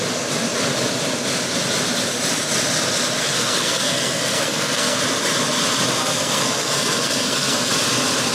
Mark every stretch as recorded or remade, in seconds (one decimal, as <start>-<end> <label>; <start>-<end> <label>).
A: 0.0-3.2 recorded; 3.2-5.0 remade; 5.0-6.0 recorded; 6.0-7.7 remade; 7.7-8.3 recorded